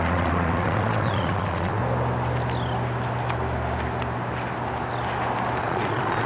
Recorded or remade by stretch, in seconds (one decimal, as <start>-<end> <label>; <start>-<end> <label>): 0.0-1.8 remade; 1.8-5.6 recorded; 5.6-6.3 remade